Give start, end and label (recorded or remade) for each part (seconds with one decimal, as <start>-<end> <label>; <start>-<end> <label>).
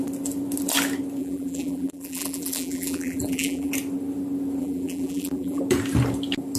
0.0-1.2 recorded; 1.2-3.7 remade; 3.7-4.6 recorded; 4.6-5.6 remade; 5.6-6.6 recorded